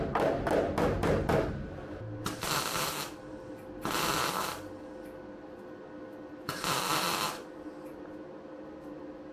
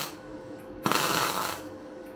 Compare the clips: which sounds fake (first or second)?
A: second